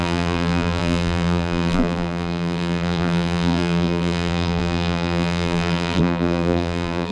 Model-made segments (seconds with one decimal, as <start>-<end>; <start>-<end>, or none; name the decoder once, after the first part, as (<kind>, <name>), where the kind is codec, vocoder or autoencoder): 0.0-7.1 (vocoder, BigVGAN v2)

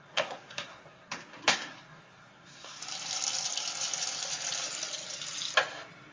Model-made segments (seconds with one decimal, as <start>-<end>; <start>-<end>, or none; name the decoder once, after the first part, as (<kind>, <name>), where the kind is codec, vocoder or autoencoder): 0.0-2.8 (codec, SNAC)

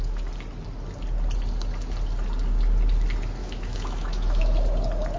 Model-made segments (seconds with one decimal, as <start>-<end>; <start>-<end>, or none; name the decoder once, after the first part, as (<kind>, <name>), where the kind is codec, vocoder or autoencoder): 3.4-4.4 (autoencoder, DAC-VAE)

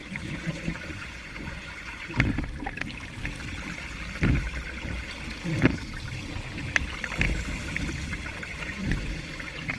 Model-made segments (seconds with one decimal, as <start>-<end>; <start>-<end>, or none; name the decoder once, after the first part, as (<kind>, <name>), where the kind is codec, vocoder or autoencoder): 0.0-2.1 (vocoder, Vocos); 8.5-9.1

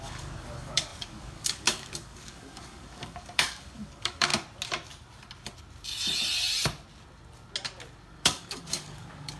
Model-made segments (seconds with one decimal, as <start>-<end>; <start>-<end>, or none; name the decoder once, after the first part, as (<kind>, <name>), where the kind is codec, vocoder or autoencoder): 0.0-4.3 (codec, DAC); 8.0-9.4

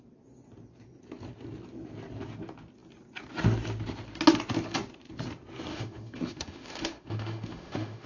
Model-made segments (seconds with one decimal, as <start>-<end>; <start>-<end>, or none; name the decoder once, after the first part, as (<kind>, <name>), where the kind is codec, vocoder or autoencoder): 5.7-8.1 (autoencoder, DAC-VAE)